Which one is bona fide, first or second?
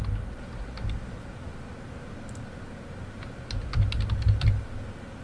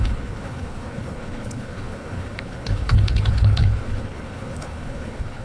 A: first